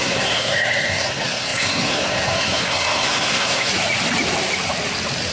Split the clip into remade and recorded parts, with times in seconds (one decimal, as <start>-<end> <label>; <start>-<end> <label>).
0.0-3.7 remade; 3.7-5.3 recorded